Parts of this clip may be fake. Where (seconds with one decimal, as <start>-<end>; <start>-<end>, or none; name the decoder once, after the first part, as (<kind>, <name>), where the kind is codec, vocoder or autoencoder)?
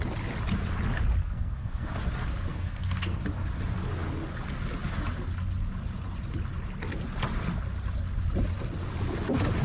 1.2-1.9 (codec, SNAC); 2.5-3.2